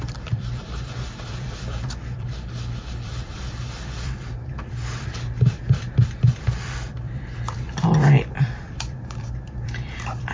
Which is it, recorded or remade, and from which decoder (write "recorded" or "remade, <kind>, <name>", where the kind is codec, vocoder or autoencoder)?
remade, vocoder, BigVGAN v2